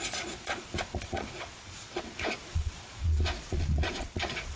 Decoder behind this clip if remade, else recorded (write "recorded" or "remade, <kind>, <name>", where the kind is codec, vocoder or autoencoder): remade, vocoder, Vocos